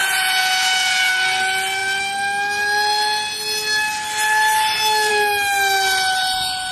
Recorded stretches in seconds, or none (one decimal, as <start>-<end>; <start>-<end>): 1.1-6.7